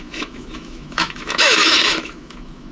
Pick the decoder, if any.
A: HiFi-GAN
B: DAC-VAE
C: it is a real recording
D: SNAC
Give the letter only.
B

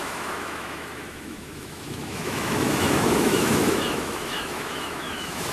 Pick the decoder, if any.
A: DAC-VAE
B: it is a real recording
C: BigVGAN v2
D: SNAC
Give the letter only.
A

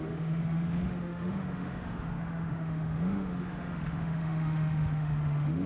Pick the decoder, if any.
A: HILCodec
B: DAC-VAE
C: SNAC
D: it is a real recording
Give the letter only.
B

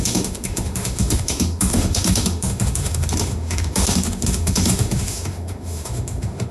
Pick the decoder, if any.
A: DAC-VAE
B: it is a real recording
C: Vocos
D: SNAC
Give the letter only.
A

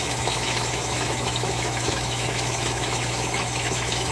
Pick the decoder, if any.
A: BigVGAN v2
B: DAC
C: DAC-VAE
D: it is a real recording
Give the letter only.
C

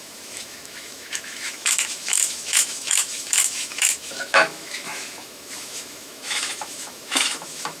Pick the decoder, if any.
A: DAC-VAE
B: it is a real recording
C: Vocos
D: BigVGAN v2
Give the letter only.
A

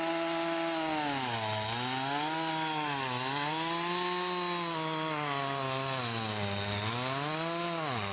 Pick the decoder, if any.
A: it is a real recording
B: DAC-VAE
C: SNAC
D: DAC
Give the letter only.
A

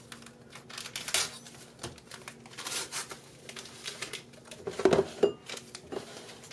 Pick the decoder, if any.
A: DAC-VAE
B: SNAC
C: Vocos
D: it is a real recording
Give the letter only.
D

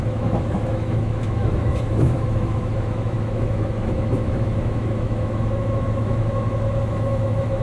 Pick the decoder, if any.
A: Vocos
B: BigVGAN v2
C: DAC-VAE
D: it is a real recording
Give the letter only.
C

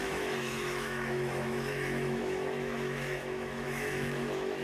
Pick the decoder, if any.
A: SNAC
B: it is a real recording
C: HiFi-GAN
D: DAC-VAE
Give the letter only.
D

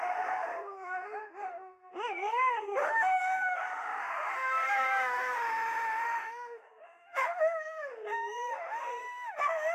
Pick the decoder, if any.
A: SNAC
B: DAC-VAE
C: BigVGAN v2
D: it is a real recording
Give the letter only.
B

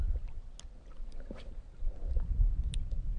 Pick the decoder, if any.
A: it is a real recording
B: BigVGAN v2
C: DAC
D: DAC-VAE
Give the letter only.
A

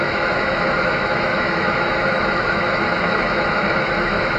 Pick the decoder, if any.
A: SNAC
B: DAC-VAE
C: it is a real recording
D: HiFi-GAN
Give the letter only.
B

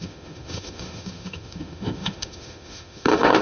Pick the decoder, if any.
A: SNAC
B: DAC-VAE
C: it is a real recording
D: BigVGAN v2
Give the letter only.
B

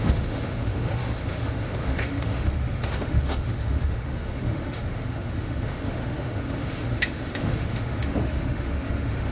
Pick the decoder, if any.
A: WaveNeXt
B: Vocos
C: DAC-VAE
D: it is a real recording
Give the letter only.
C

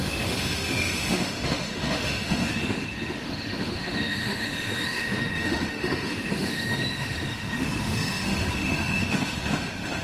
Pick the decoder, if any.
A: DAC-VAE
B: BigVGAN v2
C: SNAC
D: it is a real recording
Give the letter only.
A